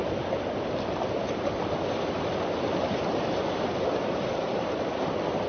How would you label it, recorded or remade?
recorded